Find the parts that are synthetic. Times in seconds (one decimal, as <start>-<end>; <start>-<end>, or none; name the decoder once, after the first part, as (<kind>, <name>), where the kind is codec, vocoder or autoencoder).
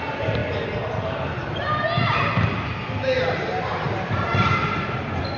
none